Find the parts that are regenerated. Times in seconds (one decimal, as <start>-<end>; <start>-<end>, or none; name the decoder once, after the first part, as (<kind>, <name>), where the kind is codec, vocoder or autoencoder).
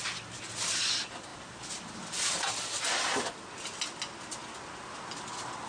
none